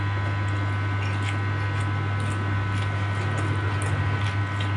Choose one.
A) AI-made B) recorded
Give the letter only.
B